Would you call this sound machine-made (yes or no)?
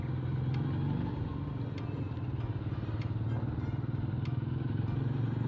no